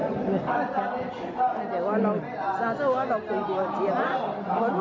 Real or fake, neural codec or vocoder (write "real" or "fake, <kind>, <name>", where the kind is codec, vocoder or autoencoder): real